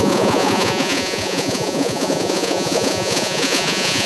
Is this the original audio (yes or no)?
no